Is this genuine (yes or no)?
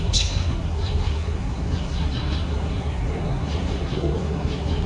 no